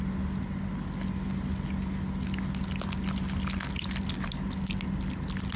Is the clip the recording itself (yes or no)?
yes